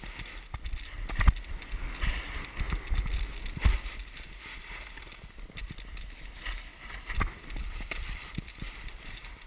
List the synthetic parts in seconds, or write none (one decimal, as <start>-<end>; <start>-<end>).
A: 6.7-8.4